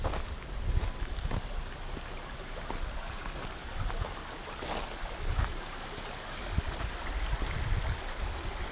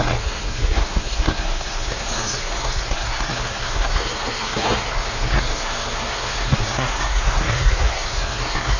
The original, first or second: first